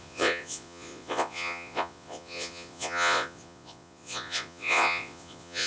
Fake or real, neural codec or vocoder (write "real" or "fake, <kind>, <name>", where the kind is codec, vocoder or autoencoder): fake, vocoder, Vocos